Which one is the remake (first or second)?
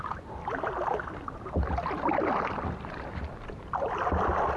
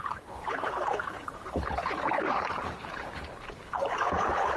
second